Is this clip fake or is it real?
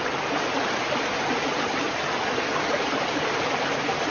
real